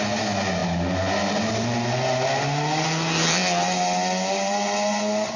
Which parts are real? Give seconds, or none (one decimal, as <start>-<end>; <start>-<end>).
0.0-5.4